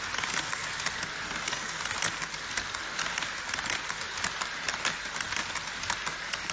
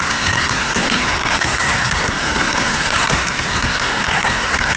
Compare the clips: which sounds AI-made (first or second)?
second